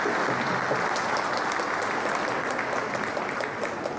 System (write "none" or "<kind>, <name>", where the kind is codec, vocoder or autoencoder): none